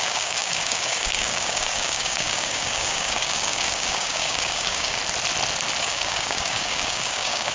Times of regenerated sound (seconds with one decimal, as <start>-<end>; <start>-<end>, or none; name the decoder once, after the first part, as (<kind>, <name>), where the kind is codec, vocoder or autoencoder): 0.0-5.0 (codec, DAC); 5.8-7.5